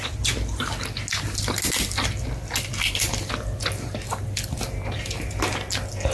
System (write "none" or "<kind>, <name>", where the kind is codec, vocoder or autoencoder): none